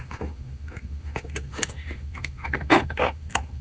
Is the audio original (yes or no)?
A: no